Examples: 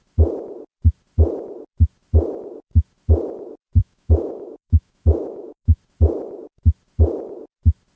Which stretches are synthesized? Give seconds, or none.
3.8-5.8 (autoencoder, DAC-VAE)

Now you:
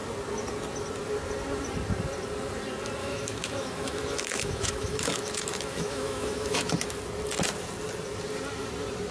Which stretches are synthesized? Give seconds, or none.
3.0-7.0 (autoencoder, DAC-VAE)

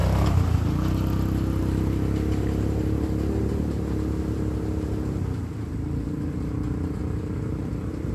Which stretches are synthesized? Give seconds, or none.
none

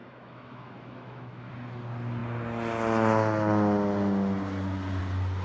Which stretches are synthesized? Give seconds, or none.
0.0-1.5 (autoencoder, DAC-VAE)

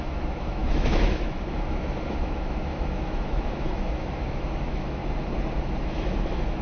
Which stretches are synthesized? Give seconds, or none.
0.0-5.0 (autoencoder, DAC-VAE); 5.6-6.6

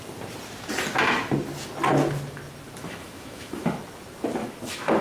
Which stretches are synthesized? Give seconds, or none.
2.8-3.8 (autoencoder, DAC-VAE); 4.4-5.0

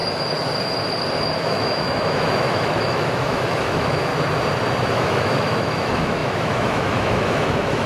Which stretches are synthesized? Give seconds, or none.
1.4-4.1 (autoencoder, DAC-VAE); 4.9-7.9